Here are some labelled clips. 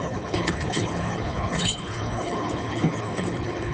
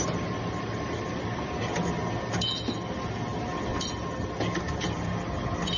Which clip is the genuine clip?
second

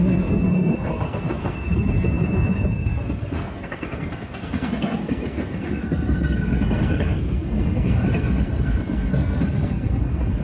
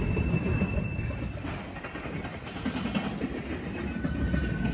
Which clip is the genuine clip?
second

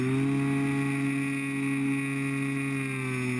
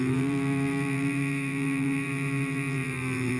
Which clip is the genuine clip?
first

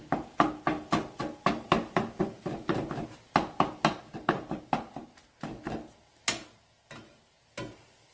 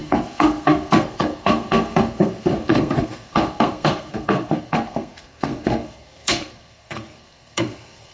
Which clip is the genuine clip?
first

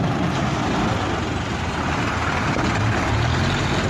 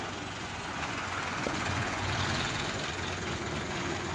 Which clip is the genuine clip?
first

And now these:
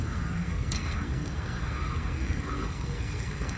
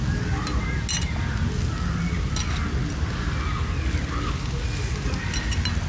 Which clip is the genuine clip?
second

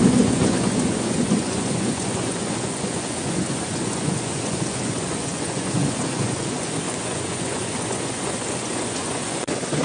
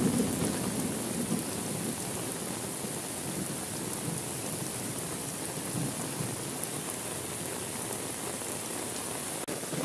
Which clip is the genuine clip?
second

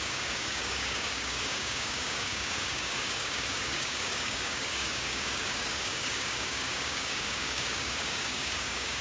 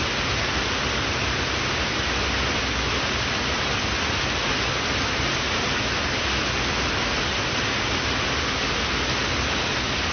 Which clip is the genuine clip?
second